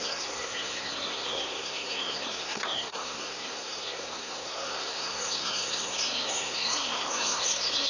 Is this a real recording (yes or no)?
no